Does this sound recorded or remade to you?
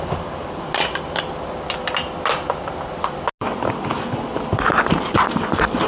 recorded